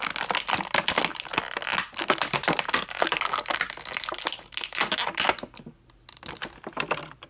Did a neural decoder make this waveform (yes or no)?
no